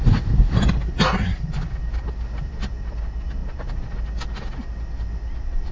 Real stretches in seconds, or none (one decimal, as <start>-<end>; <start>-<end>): 0.0-5.7